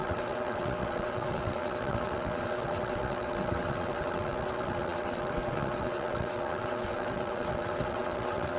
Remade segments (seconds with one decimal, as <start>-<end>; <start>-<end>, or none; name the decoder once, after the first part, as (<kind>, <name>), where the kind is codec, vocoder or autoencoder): 0.0-8.6 (vocoder, WaveNeXt)